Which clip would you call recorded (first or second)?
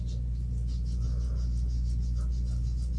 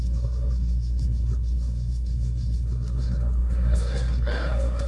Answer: first